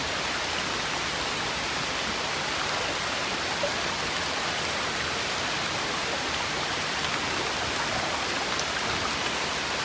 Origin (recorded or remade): recorded